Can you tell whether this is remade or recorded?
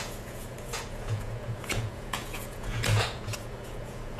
remade